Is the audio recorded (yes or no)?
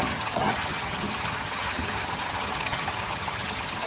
no